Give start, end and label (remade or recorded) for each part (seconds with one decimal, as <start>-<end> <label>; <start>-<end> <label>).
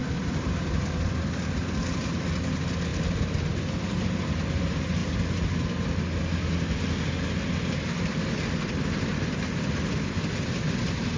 0.0-11.2 recorded